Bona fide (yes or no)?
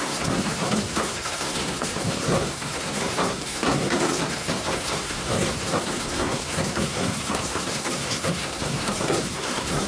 no